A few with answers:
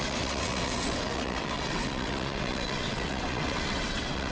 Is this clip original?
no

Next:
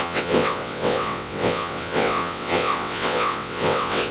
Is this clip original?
no